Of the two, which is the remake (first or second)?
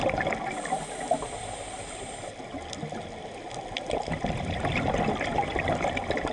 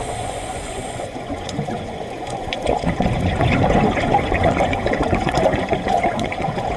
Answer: second